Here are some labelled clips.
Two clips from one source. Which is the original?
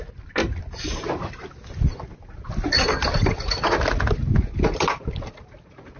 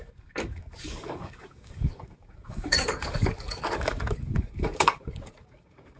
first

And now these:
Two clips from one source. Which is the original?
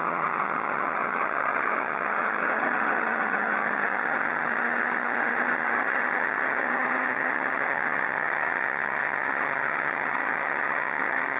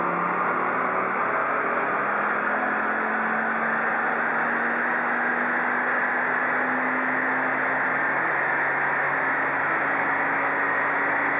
second